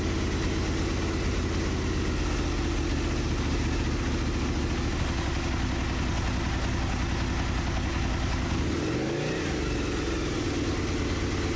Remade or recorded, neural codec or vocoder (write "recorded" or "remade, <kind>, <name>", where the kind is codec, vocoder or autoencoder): recorded